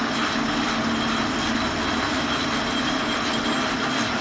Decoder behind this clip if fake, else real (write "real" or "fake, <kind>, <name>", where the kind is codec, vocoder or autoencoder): real